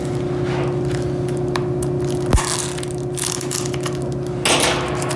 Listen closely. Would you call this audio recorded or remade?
recorded